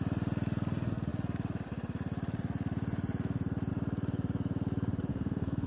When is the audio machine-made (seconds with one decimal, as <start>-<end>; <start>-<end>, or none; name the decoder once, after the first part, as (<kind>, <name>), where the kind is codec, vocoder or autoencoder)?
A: 5.1-5.7 (codec, SNAC)